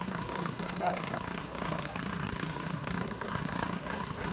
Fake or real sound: fake